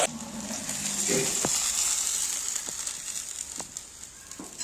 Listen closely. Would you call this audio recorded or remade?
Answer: recorded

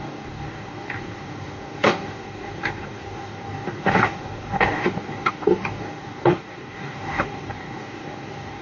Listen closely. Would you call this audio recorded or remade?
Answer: remade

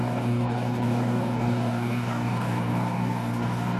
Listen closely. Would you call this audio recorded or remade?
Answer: remade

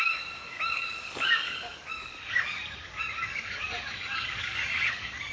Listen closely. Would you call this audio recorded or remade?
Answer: remade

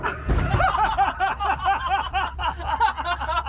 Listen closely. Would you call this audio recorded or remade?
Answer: recorded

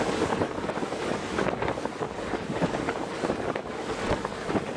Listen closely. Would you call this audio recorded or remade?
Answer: remade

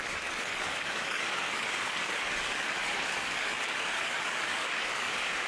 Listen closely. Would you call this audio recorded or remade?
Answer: remade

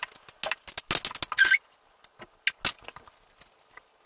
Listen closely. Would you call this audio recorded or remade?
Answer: recorded